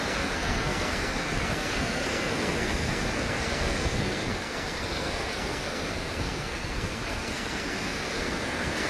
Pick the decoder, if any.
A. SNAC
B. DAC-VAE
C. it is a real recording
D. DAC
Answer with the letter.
A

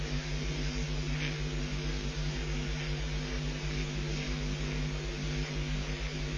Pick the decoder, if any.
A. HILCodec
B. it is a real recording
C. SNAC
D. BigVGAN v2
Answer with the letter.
B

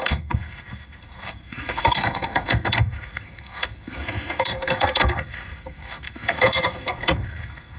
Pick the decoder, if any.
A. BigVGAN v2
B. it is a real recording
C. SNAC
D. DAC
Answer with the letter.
C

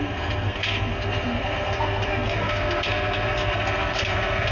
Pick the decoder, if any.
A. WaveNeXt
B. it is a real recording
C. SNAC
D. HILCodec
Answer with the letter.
C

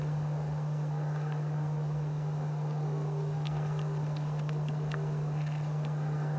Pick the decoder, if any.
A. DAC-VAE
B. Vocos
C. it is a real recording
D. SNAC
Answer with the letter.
D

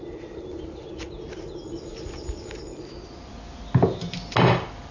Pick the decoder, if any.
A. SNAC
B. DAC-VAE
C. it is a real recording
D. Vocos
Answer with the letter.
C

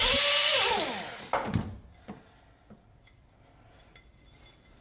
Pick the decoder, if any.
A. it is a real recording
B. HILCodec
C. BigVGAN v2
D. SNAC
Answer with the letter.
A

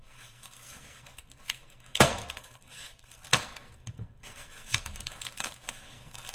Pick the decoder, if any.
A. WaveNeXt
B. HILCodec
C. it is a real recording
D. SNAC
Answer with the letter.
D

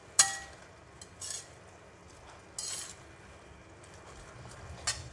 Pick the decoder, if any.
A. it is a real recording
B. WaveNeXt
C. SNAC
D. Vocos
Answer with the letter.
A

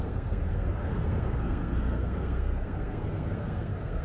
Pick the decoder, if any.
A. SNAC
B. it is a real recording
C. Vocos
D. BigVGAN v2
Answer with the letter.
A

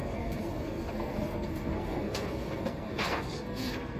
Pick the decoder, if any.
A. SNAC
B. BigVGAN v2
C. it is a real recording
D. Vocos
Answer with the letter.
A